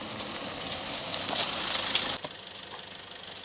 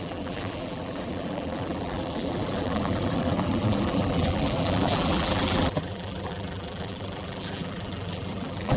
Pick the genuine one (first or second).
first